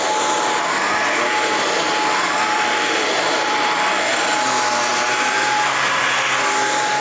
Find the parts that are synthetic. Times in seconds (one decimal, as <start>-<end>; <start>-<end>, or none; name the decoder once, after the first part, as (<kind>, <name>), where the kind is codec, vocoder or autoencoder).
1.8-3.9 (vocoder, BigVGAN v2)

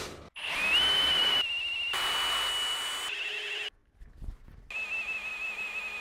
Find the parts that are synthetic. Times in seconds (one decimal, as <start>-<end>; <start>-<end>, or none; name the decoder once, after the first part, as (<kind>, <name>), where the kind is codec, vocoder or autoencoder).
0.8-2.0 (vocoder, BigVGAN v2)

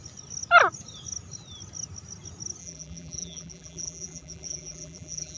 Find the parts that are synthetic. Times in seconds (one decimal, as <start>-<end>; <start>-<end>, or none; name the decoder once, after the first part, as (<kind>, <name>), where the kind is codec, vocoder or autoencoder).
2.6-5.4 (vocoder, BigVGAN v2)

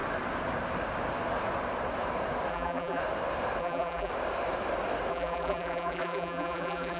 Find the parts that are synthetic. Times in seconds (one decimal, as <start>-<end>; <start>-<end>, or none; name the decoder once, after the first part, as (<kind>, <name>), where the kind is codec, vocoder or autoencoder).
2.5-3.0 (vocoder, BigVGAN v2); 3.6-4.1; 5.1-7.0

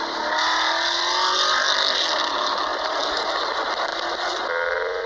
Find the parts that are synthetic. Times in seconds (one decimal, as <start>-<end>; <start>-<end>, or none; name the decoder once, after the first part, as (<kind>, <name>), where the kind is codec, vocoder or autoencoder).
2.7-3.4 (vocoder, BigVGAN v2)

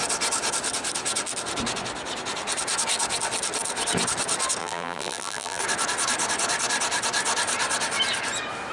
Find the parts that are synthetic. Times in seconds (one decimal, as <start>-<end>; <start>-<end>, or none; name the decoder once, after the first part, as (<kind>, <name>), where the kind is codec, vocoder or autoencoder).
4.6-5.6 (vocoder, BigVGAN v2)

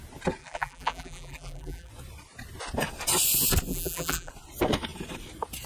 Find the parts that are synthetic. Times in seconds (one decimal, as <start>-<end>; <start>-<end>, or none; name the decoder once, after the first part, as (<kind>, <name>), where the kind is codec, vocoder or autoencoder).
0.4-1.9 (vocoder, BigVGAN v2); 3.7-4.3

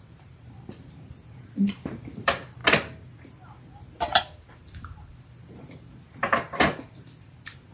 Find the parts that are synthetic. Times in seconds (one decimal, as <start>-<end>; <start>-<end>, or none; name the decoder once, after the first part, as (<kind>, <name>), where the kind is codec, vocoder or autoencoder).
0.0-2.6 (vocoder, BigVGAN v2); 3.9-7.7